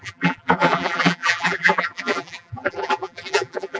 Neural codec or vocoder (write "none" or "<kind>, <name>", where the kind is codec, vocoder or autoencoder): vocoder, BigVGAN v2